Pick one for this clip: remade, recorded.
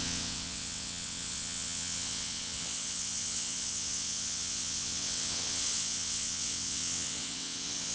remade